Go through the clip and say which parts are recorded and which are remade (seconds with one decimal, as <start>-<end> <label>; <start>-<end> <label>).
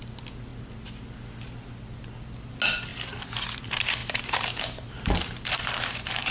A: 0.0-4.0 recorded; 4.0-6.3 remade